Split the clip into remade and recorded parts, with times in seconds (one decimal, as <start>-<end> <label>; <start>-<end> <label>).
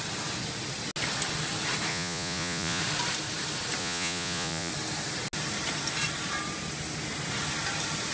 0.0-1.9 recorded; 1.9-2.8 remade; 2.8-3.8 recorded; 3.8-4.7 remade; 4.7-8.1 recorded